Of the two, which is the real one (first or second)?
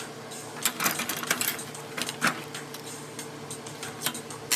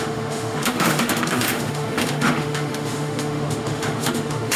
first